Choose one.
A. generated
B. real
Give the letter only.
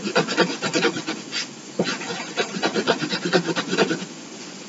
A